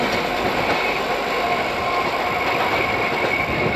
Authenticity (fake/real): real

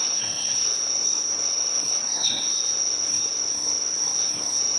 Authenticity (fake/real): fake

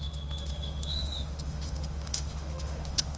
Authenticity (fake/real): fake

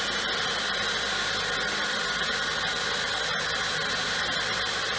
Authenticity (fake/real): real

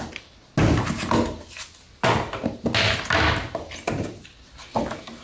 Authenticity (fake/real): real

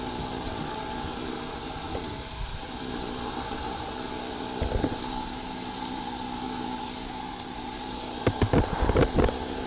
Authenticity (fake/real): real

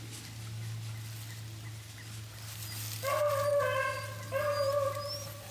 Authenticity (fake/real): real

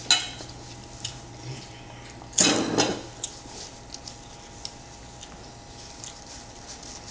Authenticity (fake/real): real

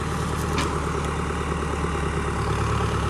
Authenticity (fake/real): real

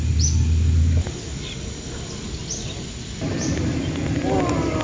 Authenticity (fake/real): real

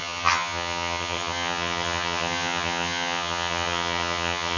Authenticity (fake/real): fake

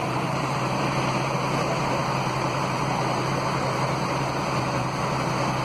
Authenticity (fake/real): fake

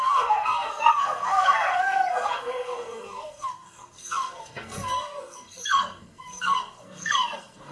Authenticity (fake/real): fake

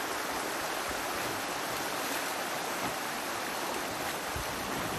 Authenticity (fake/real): real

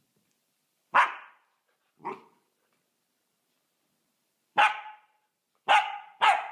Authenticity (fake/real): fake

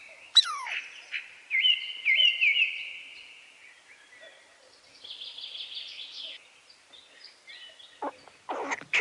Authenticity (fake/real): real